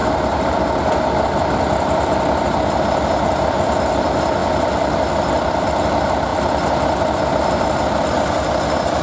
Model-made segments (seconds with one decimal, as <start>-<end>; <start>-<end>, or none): 0.0-0.7